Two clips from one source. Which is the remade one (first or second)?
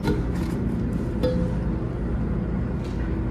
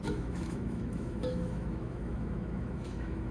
second